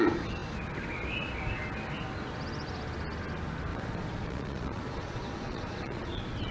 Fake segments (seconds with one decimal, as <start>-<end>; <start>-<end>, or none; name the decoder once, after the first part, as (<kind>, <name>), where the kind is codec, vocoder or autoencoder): 3.7-6.5 (vocoder, Vocos)